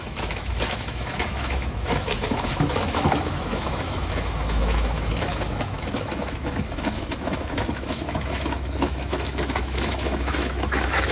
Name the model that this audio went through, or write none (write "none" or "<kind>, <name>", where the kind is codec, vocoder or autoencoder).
autoencoder, DAC-VAE